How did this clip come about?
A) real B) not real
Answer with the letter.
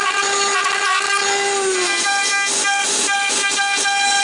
A